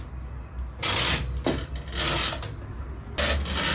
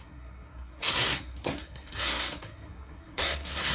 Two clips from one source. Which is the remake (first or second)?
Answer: second